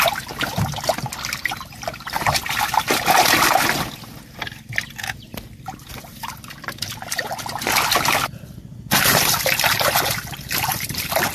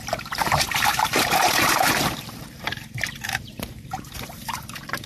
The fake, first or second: second